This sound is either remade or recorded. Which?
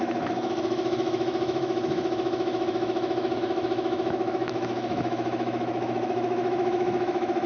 remade